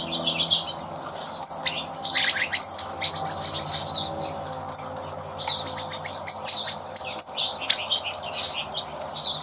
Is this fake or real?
real